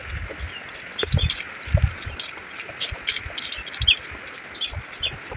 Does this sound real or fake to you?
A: real